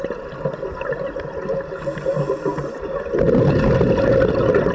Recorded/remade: recorded